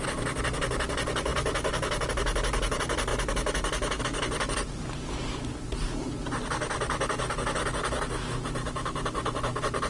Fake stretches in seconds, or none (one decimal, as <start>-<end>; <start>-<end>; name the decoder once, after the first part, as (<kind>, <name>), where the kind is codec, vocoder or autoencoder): none